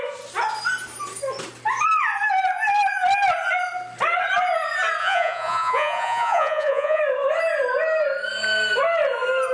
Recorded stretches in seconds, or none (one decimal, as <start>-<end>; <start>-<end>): 0.0-5.0; 7.0-9.5